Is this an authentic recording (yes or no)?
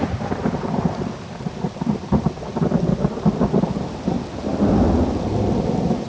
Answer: yes